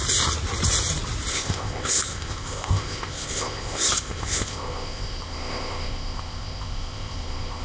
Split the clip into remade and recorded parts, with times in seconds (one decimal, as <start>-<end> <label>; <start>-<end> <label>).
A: 0.0-1.3 recorded; 1.3-7.6 remade